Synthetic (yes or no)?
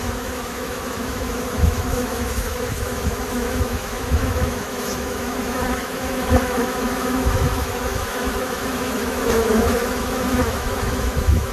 yes